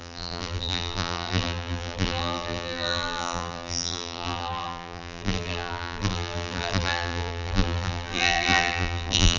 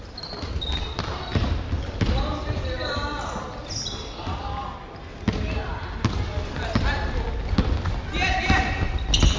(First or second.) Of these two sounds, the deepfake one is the first